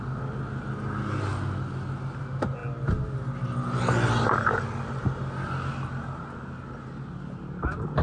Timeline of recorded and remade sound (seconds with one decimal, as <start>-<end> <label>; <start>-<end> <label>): 0.0-8.0 recorded